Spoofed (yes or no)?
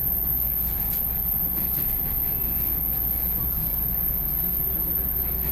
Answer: no